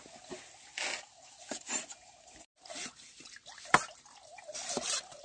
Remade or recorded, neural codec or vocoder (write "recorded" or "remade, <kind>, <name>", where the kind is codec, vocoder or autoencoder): recorded